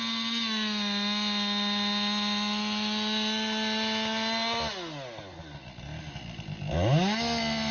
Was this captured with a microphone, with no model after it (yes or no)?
yes